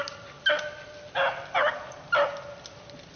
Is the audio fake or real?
real